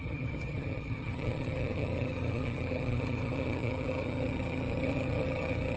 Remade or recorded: remade